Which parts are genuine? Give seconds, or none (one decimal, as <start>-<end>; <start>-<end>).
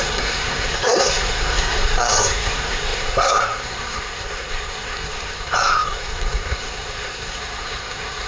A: none